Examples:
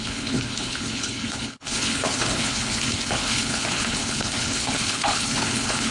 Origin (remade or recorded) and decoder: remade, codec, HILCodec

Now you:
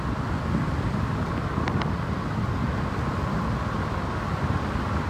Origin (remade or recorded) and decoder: recorded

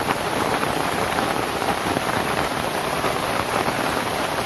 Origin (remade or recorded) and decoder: remade, vocoder, BigVGAN v2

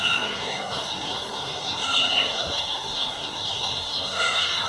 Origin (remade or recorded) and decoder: remade, codec, SNAC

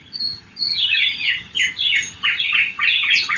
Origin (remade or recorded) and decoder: remade, vocoder, HiFi-GAN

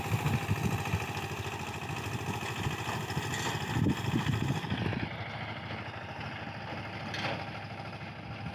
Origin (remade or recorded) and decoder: recorded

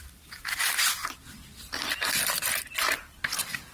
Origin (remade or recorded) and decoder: recorded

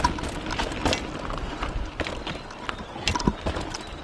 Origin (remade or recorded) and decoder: recorded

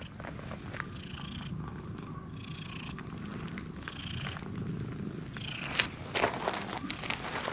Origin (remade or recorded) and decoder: recorded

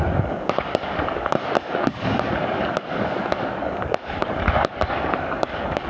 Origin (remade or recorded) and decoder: remade, codec, DAC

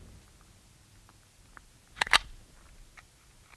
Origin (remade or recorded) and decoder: recorded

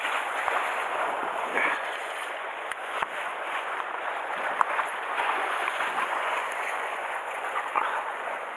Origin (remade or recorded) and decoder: remade, vocoder, Vocos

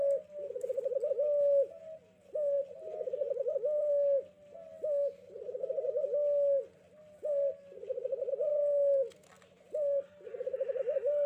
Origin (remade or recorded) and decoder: recorded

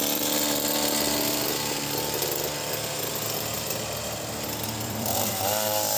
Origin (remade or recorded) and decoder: remade, vocoder, BigVGAN v2